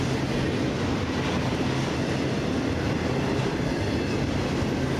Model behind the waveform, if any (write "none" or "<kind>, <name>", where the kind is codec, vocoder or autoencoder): none